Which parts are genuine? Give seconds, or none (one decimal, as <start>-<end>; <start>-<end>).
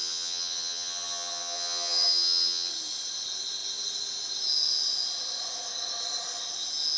2.7-7.0